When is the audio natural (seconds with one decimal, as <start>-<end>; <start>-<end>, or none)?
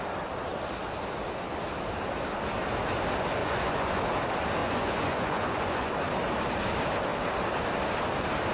0.0-3.4; 4.0-4.6; 5.9-8.5